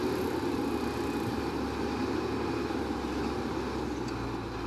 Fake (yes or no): no